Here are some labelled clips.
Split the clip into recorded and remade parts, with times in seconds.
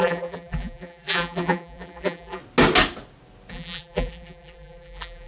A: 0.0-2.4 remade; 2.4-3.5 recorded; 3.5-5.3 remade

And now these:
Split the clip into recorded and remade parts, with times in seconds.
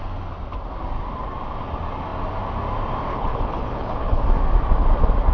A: 0.0-3.1 recorded; 3.1-4.2 remade; 4.2-5.3 recorded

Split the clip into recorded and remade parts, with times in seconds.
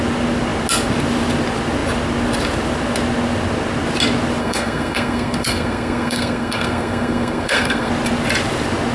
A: 0.0-4.4 recorded; 4.4-7.9 remade; 7.9-8.9 recorded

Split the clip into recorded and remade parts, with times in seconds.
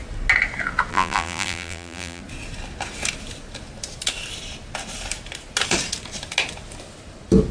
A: 0.0-0.9 recorded; 0.9-2.2 remade; 2.2-7.5 recorded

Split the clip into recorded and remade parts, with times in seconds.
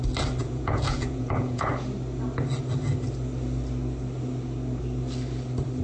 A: 0.0-0.4 recorded; 0.4-1.7 remade; 1.7-5.8 recorded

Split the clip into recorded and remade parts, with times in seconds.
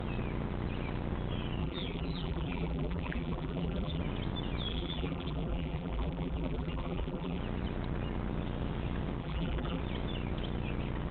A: 0.0-1.6 recorded; 1.6-4.0 remade; 4.0-4.7 recorded; 4.7-7.4 remade; 7.4-9.2 recorded; 9.2-9.8 remade; 9.8-11.1 recorded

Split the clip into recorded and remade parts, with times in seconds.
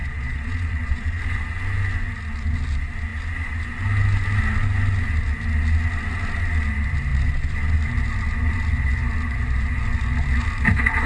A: 0.0-1.2 remade; 1.2-11.1 recorded